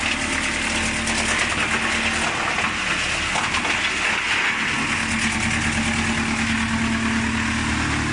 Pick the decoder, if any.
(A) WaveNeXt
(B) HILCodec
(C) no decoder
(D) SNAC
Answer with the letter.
C